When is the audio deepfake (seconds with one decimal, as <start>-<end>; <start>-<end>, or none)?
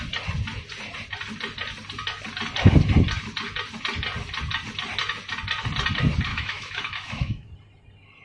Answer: 6.3-7.5